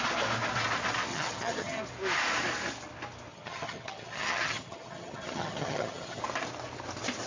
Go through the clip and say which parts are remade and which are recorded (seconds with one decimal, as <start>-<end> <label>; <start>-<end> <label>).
0.0-1.1 recorded; 1.1-1.8 remade; 1.8-3.3 recorded; 3.3-6.2 remade; 6.2-7.3 recorded